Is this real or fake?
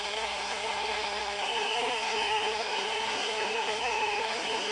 fake